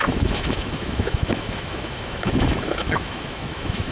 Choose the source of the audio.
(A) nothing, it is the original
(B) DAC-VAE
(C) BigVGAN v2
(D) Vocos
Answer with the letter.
B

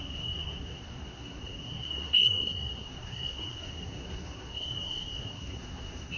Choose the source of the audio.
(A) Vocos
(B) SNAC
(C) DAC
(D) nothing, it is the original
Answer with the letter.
B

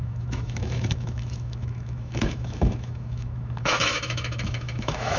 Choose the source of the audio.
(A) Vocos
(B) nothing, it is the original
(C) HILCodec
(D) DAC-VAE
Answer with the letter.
D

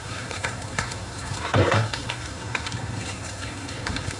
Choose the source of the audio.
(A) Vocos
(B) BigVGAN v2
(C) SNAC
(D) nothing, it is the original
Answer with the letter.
C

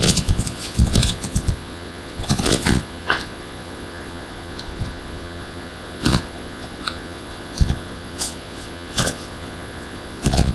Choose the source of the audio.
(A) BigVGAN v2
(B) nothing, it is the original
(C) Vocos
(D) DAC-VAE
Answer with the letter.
C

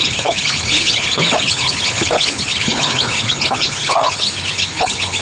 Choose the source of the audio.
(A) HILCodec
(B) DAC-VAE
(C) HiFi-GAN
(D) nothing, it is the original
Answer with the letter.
A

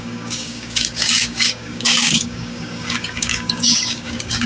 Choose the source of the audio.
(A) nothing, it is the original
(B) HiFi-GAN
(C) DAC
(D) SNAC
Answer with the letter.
C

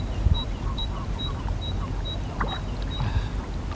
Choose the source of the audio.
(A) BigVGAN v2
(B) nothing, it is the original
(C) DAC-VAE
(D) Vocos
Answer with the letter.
B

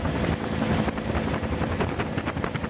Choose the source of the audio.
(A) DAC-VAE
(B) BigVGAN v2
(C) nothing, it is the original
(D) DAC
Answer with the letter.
C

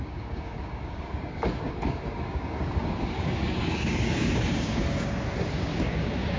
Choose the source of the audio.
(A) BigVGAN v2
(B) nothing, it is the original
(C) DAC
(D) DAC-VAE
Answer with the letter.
C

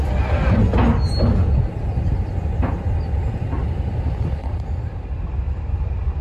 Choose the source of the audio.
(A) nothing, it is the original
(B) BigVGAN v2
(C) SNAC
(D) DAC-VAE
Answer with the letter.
A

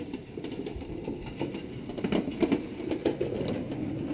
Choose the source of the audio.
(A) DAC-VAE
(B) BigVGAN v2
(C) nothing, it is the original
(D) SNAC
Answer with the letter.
B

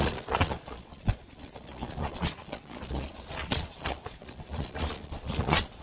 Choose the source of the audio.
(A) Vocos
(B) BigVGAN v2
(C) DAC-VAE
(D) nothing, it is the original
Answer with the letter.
A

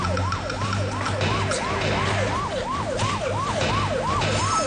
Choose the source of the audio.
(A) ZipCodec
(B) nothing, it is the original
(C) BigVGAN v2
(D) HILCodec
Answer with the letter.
B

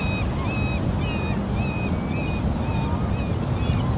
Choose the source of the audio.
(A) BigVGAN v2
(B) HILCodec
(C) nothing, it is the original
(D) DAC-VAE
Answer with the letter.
C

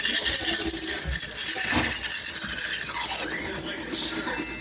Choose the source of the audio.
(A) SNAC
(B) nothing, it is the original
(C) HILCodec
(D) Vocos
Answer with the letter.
B